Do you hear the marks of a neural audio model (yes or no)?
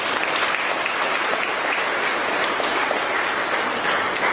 no